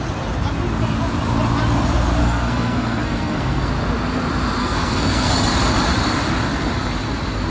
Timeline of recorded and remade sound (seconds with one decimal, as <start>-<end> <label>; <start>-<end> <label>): 0.0-2.2 recorded; 2.2-3.7 remade; 3.7-4.6 recorded; 4.6-5.3 remade; 5.3-7.5 recorded

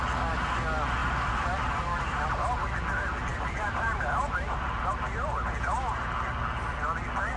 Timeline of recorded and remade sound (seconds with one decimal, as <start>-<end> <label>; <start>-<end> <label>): 0.0-1.0 recorded; 1.0-2.6 remade; 2.6-3.3 recorded; 3.3-4.8 remade; 4.8-7.4 recorded

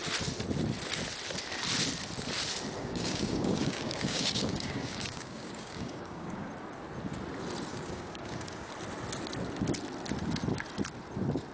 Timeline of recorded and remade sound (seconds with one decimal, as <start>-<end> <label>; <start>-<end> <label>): 0.0-2.8 recorded; 2.8-6.5 remade; 6.5-7.7 recorded; 7.7-8.7 remade; 8.7-11.5 recorded

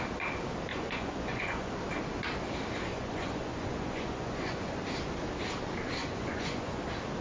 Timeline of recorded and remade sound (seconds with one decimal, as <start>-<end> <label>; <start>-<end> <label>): 0.0-0.7 recorded; 0.7-1.7 remade; 1.7-2.9 recorded; 2.9-4.7 remade; 4.7-6.0 recorded; 6.0-6.8 remade; 6.8-7.2 recorded

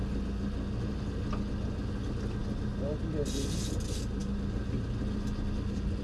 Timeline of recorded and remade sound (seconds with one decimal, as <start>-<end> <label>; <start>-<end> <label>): 0.0-6.0 recorded

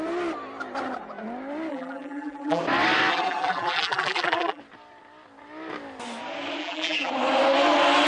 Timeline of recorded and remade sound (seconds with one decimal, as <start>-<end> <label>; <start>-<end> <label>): 0.0-1.7 recorded; 1.7-2.6 remade; 2.6-3.1 recorded; 3.1-4.6 remade; 4.6-6.6 recorded; 6.6-7.1 remade; 7.1-8.1 recorded

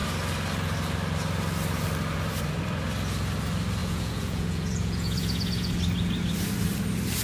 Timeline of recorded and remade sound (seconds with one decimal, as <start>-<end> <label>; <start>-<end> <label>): 0.0-3.8 recorded; 3.8-5.7 remade; 5.7-7.2 recorded

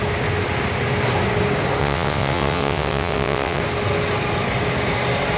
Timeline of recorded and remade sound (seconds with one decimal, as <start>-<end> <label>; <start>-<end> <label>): 0.0-1.8 recorded; 1.8-3.6 remade; 3.6-5.4 recorded